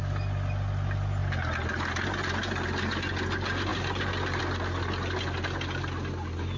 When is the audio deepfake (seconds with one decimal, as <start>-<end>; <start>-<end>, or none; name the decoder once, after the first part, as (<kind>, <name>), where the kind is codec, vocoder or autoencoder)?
none